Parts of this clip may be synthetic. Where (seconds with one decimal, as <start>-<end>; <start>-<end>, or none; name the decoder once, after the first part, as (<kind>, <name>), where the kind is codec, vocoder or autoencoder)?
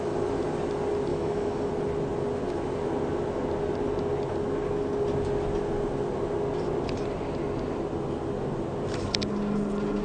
1.1-1.7 (autoencoder, DAC-VAE)